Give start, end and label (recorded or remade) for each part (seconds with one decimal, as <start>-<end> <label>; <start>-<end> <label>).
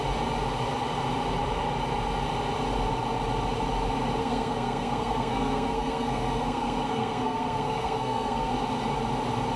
0.0-4.2 recorded; 4.2-8.5 remade; 8.5-9.6 recorded